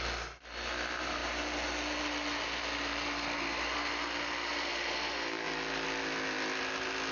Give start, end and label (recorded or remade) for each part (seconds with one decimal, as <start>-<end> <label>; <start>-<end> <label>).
0.0-7.1 recorded